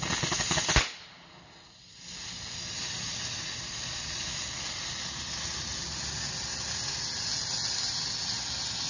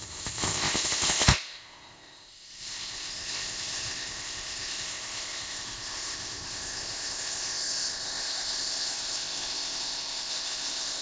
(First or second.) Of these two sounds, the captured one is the first